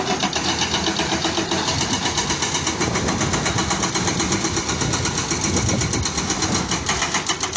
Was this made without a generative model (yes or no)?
yes